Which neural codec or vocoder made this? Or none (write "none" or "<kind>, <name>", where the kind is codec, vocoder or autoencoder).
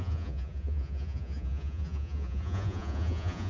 vocoder, Vocos